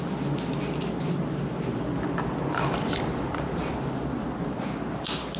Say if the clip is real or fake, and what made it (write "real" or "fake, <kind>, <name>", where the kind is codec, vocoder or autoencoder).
real